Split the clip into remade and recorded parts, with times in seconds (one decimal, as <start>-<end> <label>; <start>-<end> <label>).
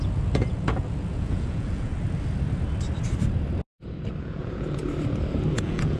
0.0-1.9 remade; 1.9-4.2 recorded; 4.2-4.8 remade; 4.8-5.5 recorded; 5.5-6.0 remade